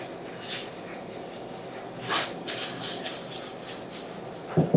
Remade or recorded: recorded